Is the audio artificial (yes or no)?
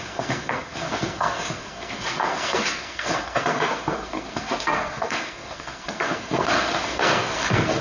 yes